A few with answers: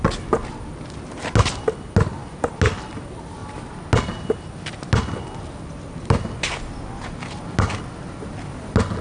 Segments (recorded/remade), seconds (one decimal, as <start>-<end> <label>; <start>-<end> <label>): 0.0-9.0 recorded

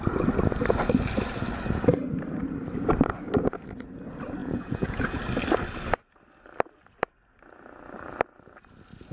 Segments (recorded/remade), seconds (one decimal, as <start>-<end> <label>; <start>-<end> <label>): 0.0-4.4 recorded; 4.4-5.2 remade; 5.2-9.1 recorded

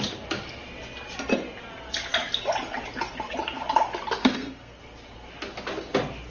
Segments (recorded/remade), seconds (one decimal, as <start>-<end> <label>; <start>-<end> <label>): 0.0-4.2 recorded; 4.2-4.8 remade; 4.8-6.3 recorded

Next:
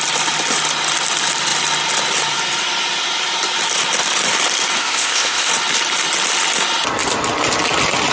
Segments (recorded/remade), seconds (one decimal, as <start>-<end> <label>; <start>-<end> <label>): 0.0-4.8 recorded; 4.8-5.5 remade; 5.5-8.1 recorded

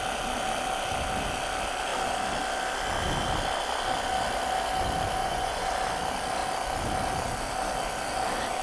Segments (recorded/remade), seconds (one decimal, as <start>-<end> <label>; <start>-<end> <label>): 0.0-5.2 recorded; 5.2-5.7 remade; 5.7-8.6 recorded